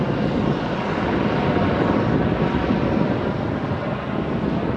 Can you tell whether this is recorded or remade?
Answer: recorded